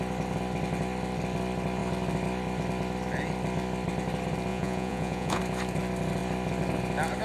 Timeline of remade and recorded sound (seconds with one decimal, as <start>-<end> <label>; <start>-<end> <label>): 0.0-4.5 recorded; 4.5-5.4 remade; 5.4-7.2 recorded